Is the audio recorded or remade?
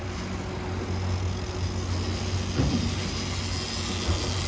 recorded